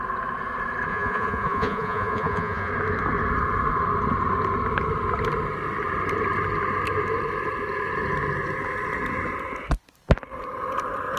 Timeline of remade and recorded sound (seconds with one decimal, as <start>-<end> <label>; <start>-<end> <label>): 0.0-0.9 recorded; 0.9-2.7 remade; 2.7-11.2 recorded